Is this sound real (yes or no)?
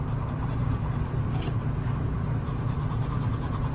no